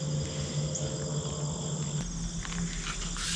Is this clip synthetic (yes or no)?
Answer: no